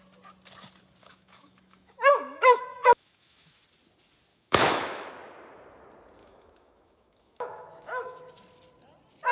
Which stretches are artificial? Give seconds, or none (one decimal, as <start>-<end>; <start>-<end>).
1.0-3.6; 4.3-5.1; 6.2-8.2